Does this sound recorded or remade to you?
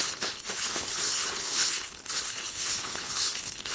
remade